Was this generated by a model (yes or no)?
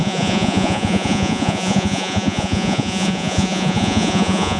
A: yes